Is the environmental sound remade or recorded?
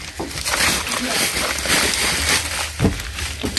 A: recorded